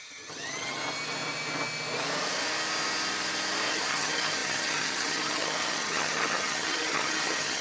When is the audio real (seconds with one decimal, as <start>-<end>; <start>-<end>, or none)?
0.8-3.7